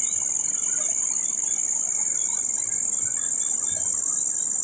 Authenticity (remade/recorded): recorded